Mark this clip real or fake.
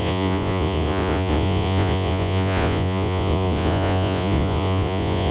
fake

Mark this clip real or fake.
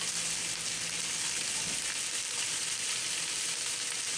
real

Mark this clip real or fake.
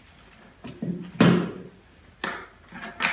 real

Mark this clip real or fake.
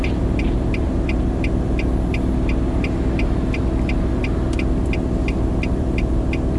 real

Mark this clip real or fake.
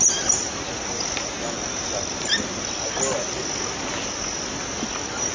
real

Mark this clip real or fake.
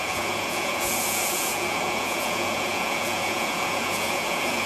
fake